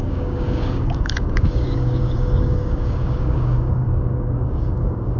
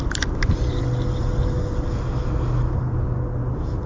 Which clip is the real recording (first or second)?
second